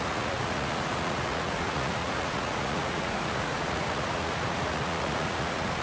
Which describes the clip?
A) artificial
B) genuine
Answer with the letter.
A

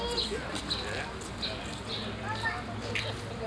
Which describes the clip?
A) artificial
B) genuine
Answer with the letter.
B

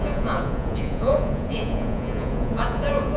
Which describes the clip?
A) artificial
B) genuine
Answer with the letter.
A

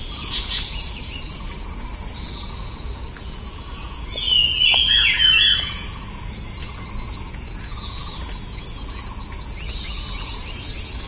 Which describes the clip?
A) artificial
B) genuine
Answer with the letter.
A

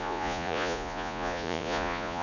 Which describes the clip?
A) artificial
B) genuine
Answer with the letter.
A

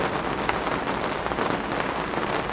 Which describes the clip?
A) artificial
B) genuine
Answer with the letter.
B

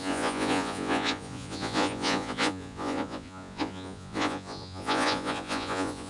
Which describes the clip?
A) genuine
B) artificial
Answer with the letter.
B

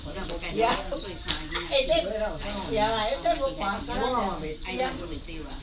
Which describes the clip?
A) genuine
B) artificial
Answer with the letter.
A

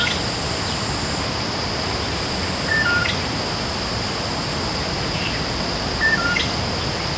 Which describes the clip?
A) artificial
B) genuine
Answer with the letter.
B